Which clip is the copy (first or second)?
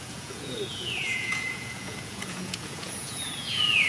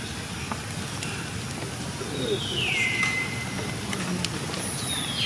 first